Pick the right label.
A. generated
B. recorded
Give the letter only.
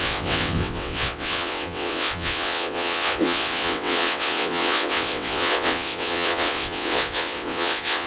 A